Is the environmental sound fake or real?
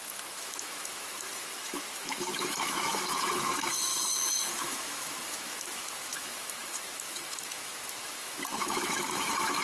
fake